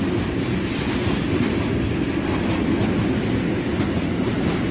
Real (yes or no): yes